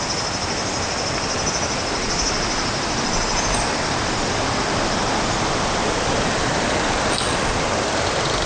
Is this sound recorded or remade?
remade